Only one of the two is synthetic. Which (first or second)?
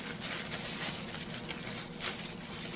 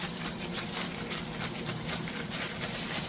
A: second